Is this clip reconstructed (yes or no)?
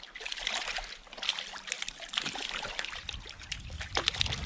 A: no